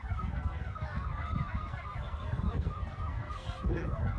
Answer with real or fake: fake